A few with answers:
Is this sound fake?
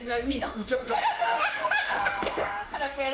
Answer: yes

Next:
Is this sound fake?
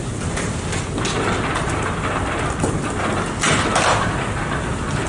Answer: no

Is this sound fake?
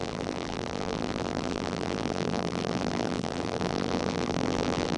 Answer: yes